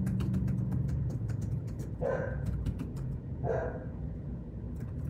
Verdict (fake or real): fake